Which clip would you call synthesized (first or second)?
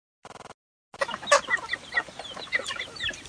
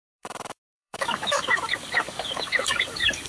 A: second